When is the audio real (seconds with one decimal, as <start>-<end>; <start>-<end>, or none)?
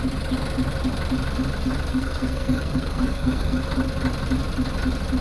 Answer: 0.0-1.9; 3.6-5.2